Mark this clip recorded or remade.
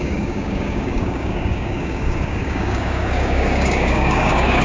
remade